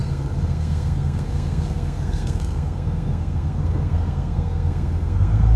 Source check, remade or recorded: remade